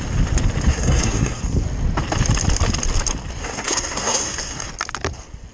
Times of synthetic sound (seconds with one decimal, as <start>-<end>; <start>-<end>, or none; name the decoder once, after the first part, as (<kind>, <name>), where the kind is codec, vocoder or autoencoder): 0.7-1.4 (codec, SNAC); 3.4-4.7